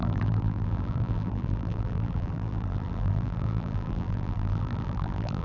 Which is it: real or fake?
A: fake